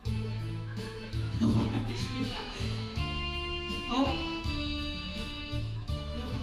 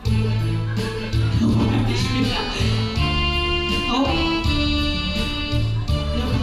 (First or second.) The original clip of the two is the second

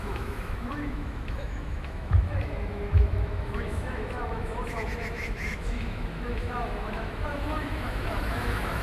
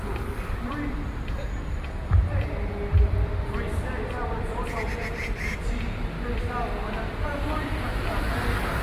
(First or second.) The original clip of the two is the second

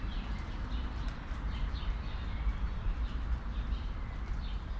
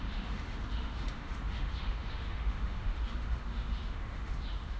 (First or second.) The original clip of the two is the first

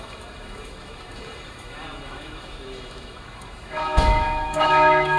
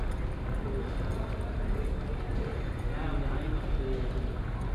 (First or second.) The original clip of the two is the second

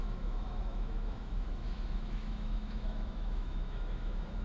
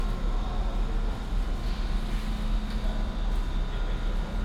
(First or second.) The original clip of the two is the second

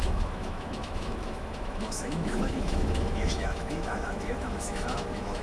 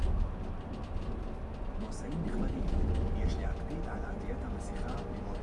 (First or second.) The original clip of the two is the second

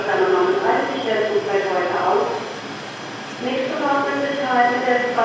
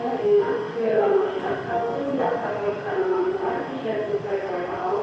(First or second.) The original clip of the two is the first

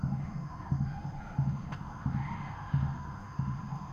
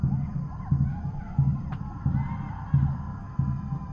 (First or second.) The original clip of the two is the second